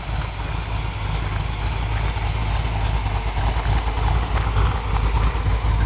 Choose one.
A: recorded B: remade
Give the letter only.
A